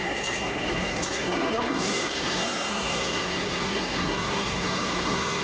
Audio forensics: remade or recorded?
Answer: remade